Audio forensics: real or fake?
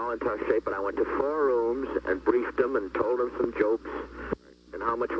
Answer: real